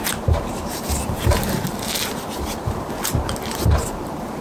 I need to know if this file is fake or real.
fake